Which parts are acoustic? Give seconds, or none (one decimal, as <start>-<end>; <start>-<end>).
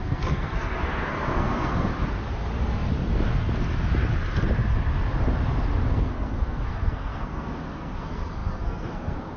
1.9-5.9